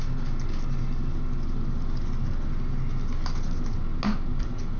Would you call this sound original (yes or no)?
yes